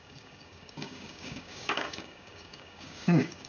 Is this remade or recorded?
remade